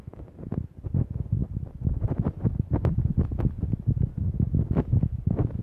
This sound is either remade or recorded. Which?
recorded